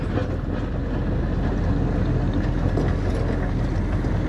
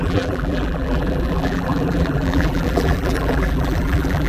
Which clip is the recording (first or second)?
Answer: first